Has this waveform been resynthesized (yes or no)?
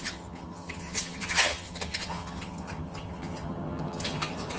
yes